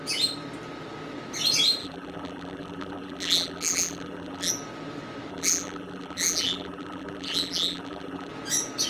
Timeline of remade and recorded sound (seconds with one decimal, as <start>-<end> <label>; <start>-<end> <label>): 0.0-1.8 recorded; 1.8-4.5 remade; 4.5-5.3 recorded; 5.3-8.3 remade; 8.3-8.9 recorded